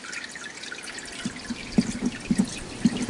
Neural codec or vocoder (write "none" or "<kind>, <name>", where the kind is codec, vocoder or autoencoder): none